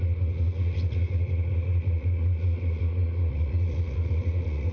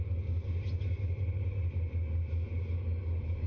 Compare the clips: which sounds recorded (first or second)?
second